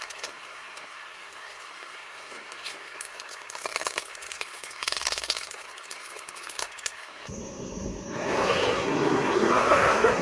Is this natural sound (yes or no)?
no